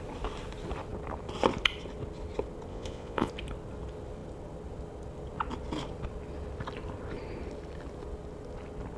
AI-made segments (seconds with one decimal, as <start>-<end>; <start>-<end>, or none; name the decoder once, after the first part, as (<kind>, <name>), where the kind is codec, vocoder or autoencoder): 2.7-3.3 (vocoder, Vocos)